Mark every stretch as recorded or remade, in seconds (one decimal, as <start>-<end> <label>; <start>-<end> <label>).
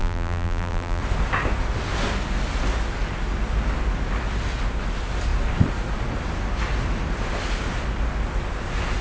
0.0-1.0 remade; 1.0-9.0 recorded